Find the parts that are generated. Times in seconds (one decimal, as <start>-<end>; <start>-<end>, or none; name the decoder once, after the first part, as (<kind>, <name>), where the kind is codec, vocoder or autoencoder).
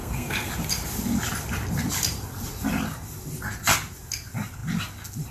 0.0-0.5 (codec, SNAC)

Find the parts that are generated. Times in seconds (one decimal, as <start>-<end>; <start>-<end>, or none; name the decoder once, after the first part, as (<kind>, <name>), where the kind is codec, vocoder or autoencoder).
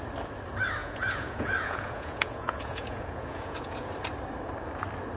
0.8-3.9 (vocoder, Vocos)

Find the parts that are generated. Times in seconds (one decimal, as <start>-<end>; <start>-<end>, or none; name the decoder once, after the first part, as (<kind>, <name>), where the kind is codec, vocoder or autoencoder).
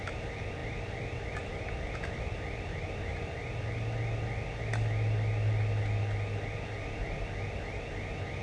none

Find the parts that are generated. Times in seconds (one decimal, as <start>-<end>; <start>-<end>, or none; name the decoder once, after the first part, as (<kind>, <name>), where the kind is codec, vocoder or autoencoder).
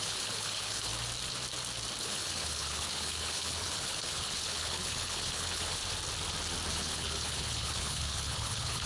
0.0-0.9 (codec, HILCodec); 2.0-5.8; 6.7-8.9